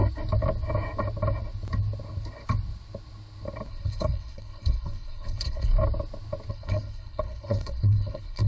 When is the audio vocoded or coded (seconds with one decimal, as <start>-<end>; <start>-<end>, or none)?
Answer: 3.7-5.7; 6.5-8.5